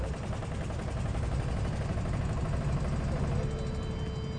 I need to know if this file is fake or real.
real